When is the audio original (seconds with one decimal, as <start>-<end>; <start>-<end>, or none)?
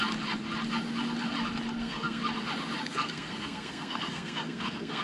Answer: 0.0-1.8; 2.2-2.8